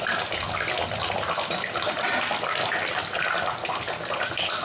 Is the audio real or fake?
real